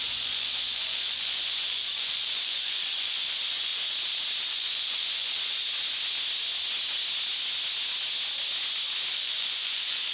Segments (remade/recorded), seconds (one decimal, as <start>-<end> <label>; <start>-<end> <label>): 0.0-3.7 remade; 3.7-4.5 recorded; 4.5-5.6 remade; 5.6-9.1 recorded; 9.1-10.1 remade